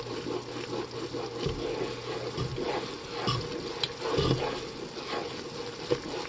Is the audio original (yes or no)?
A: yes